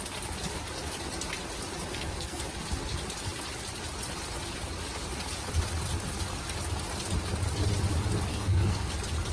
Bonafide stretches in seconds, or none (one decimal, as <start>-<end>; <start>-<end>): 0.0-1.9; 2.4-8.3; 8.9-9.3